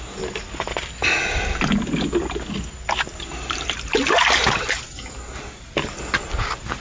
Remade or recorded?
recorded